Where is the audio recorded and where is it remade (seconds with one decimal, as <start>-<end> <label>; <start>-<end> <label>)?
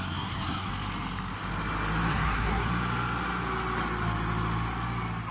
0.0-0.7 remade; 0.7-2.1 recorded; 2.1-2.7 remade; 2.7-5.3 recorded